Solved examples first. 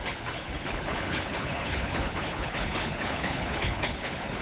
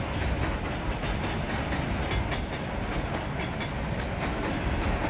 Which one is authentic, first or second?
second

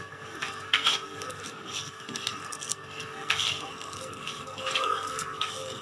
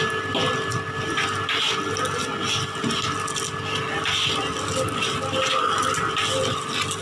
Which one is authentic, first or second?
second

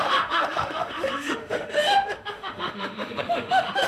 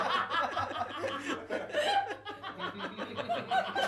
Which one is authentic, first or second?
second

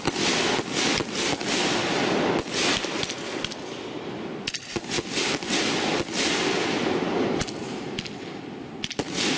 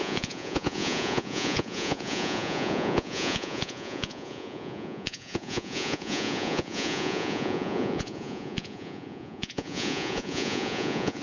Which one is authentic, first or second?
first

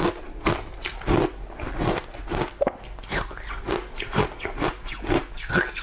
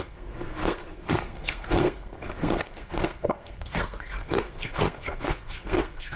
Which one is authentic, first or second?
first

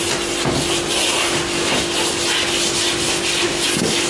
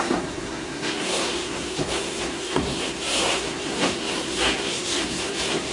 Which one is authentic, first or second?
first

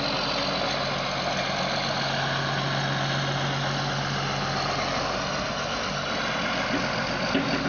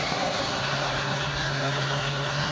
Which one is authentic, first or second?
first